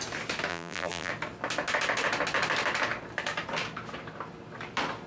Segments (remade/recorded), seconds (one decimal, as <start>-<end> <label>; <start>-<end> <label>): 0.0-0.5 recorded; 0.5-1.1 remade; 1.1-5.1 recorded

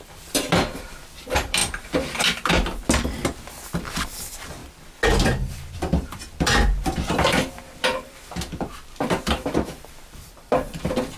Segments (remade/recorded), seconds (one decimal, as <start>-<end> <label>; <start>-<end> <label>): 0.0-1.6 remade; 1.6-3.8 recorded; 3.8-4.6 remade; 4.6-5.5 recorded; 5.5-11.2 remade